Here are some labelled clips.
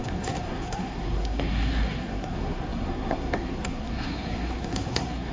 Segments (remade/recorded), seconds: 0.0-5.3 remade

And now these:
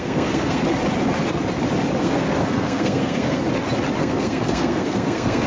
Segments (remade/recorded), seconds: 0.0-0.6 remade; 0.6-2.0 recorded; 2.0-3.4 remade; 3.4-4.0 recorded; 4.0-5.5 remade

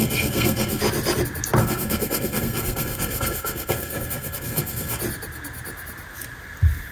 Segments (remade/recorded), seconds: 0.0-0.8 remade; 0.8-1.6 recorded; 1.6-5.0 remade; 5.0-6.9 recorded

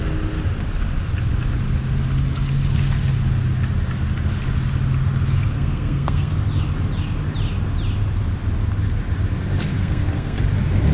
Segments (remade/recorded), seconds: 0.0-5.5 recorded; 5.5-6.3 remade; 6.3-9.7 recorded; 9.7-10.4 remade; 10.4-10.9 recorded

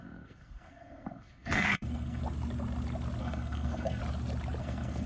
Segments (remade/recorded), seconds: 0.0-2.2 remade; 2.2-3.2 recorded; 3.2-4.0 remade; 4.0-4.6 recorded; 4.6-5.1 remade